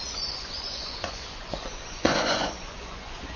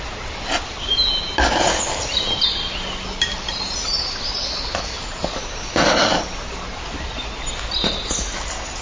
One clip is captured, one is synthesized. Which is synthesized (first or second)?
first